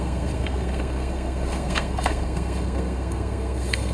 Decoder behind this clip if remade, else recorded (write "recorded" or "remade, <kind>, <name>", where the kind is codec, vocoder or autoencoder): remade, codec, SNAC